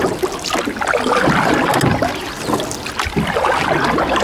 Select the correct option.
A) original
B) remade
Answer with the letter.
A